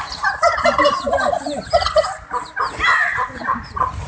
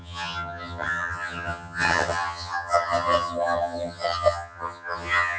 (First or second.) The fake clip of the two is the second